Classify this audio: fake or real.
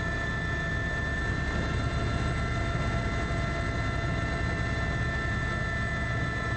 real